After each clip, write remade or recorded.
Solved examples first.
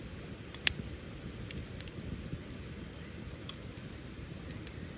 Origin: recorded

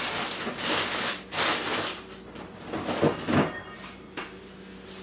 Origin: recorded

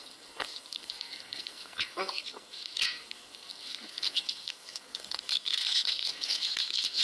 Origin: remade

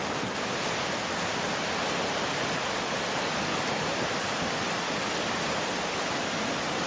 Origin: recorded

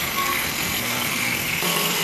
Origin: remade